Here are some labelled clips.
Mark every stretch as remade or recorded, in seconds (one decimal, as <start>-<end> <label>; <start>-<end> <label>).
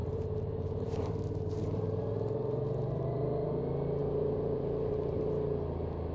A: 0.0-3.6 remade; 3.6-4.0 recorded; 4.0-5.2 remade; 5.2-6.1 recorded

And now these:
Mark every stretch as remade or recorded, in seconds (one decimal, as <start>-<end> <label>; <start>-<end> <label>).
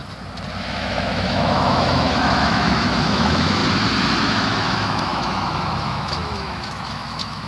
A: 0.0-0.6 recorded; 0.6-3.6 remade; 3.6-4.2 recorded; 4.2-7.5 remade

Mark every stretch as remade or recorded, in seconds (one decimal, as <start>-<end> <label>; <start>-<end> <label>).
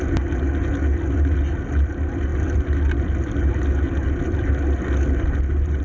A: 0.0-5.8 recorded